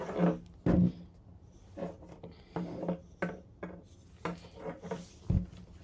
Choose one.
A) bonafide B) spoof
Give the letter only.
A